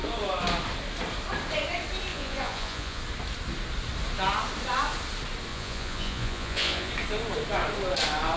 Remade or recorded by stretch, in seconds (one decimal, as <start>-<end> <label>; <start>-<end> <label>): 0.0-2.1 recorded; 2.1-3.0 remade; 3.0-5.5 recorded; 5.5-6.9 remade; 6.9-8.4 recorded